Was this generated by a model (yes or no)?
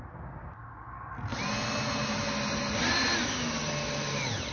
no